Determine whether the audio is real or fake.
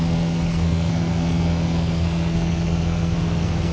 fake